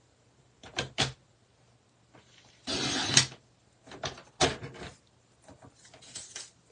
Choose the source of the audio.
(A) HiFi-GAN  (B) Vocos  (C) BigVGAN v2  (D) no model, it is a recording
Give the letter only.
D